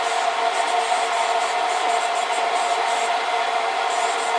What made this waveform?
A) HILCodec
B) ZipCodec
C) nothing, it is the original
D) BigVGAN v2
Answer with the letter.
C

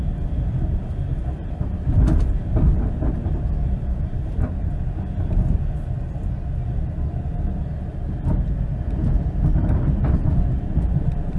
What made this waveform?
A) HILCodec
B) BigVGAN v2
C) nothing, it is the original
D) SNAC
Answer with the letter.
C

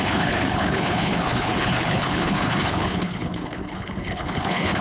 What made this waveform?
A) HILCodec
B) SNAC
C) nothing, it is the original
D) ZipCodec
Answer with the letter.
A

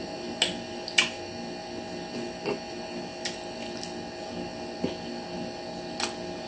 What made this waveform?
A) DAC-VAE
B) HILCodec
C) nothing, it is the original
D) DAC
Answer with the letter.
C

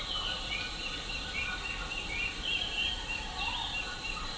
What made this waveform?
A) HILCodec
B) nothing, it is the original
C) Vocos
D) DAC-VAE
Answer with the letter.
B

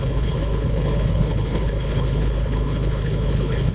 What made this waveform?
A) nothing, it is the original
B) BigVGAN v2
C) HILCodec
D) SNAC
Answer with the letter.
C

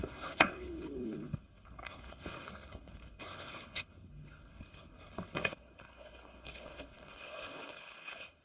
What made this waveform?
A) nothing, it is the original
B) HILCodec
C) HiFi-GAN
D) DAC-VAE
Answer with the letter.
B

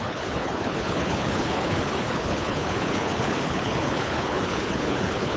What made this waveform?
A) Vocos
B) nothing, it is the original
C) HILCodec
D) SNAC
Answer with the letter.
C